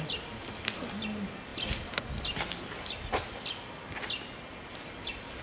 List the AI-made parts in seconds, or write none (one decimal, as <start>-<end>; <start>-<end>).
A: none